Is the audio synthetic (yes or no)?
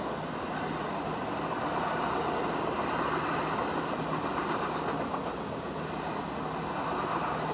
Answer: no